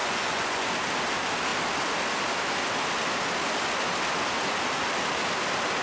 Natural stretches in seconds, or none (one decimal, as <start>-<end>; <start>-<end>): 0.7-5.8

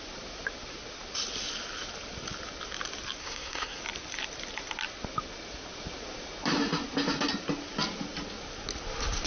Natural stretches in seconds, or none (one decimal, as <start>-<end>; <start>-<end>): 0.0-3.2; 3.8-9.3

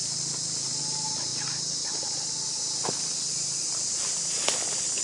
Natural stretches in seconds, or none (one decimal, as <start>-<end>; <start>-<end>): 0.0-5.0

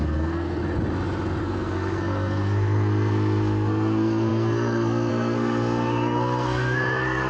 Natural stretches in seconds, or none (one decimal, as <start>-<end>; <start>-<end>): 0.6-1.4

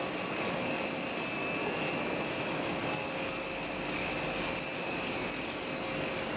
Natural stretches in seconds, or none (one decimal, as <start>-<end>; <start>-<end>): 0.0-6.4

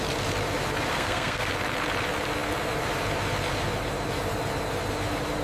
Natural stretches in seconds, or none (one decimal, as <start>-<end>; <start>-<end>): 0.0-0.9; 1.5-5.4

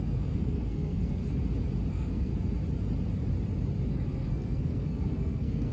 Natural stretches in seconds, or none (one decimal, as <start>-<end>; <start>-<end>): 1.2-1.9; 2.3-3.9

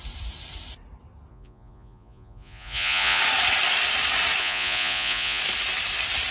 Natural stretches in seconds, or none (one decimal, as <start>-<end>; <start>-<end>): 0.0-1.3; 3.2-4.4; 5.4-6.3